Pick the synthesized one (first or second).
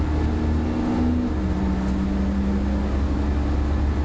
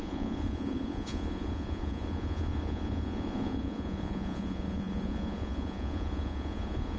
second